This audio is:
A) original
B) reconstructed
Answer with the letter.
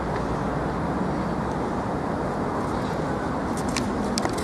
A